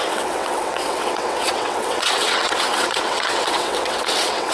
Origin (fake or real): fake